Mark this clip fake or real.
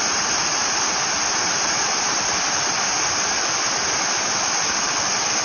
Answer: real